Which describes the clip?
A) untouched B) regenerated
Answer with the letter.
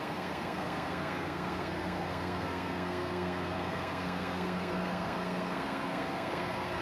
B